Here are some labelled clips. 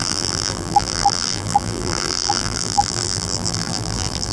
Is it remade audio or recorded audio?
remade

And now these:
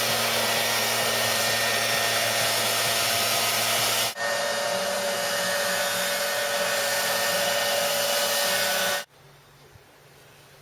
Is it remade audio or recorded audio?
recorded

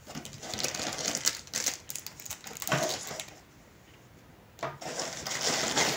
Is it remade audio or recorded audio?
recorded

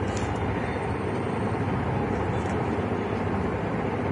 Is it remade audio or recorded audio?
recorded